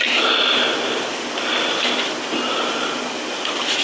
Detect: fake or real real